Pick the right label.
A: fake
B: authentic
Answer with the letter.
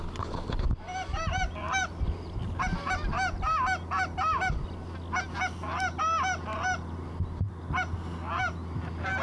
B